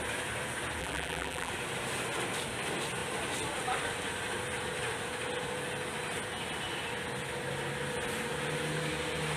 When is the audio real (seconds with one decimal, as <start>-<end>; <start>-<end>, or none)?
0.0-0.8; 1.5-9.4